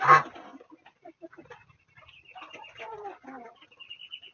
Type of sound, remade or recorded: recorded